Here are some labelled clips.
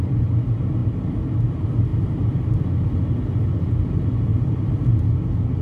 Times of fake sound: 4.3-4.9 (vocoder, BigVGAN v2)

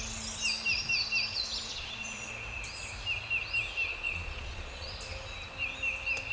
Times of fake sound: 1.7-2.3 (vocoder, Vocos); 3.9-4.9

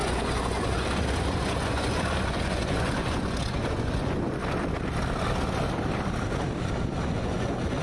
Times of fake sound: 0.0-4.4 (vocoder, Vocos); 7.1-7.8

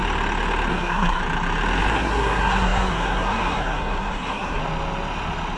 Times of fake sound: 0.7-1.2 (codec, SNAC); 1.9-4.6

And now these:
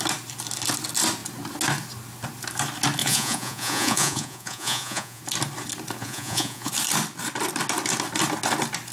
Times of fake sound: 3.0-5.2 (vocoder, Vocos); 6.0-6.7